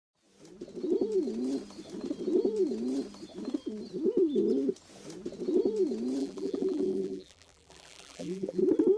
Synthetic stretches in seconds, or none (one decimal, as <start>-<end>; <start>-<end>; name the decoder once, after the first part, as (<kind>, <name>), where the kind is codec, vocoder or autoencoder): 6.2-8.6 (vocoder, BigVGAN v2)